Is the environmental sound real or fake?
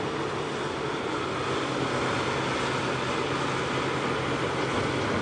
real